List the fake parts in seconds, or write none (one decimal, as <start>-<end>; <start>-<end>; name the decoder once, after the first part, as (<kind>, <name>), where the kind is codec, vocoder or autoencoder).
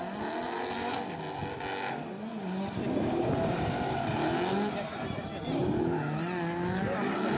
none